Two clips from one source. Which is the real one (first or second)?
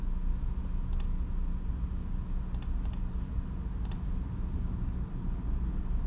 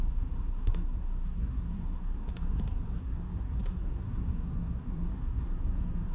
first